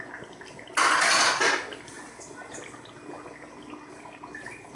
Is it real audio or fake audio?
real